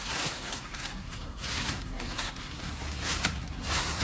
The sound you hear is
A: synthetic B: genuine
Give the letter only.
A